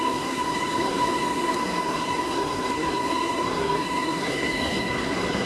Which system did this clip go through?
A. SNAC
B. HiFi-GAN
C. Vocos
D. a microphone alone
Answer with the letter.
A